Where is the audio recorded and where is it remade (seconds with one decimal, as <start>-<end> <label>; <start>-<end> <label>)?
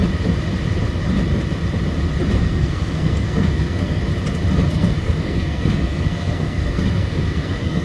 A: 0.0-2.3 recorded; 2.3-4.0 remade; 4.0-4.7 recorded; 4.7-7.8 remade